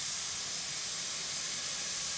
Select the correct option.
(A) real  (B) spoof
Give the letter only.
A